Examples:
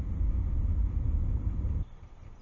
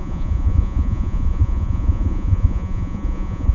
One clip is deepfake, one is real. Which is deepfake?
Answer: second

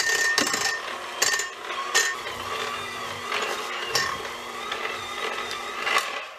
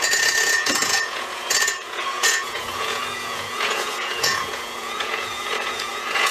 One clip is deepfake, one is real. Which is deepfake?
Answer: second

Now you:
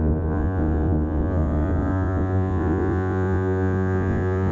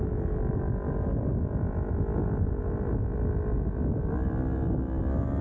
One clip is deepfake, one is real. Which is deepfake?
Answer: first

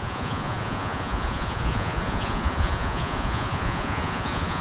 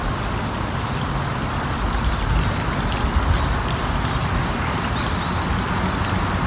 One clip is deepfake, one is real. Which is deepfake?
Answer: first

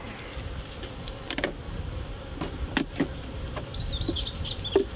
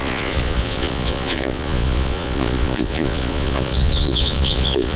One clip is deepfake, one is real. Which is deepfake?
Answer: second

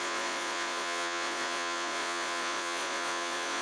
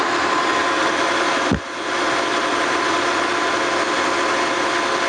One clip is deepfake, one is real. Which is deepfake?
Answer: first